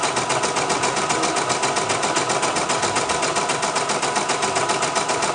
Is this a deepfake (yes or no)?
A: no